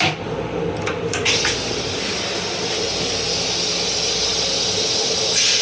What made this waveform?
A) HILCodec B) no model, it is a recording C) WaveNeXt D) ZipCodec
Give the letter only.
B